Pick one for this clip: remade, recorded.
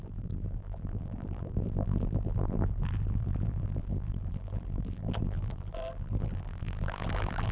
remade